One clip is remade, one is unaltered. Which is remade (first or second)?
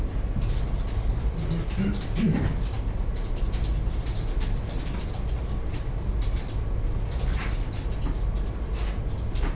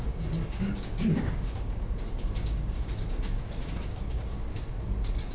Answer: second